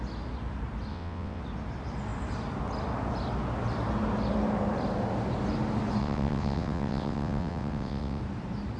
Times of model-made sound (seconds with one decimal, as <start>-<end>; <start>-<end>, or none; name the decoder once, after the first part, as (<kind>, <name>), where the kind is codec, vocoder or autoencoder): 0.9-1.4 (vocoder, WaveNeXt); 6.0-8.2